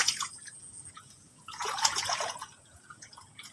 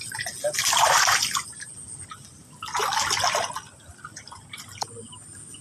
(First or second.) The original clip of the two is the second